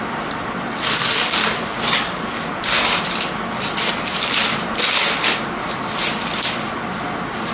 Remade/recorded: recorded